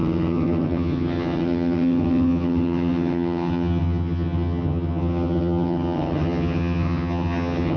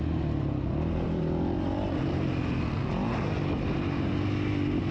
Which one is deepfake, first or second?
first